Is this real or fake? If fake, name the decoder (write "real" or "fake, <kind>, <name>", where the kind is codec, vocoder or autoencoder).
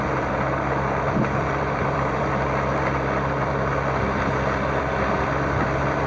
fake, vocoder, BigVGAN v2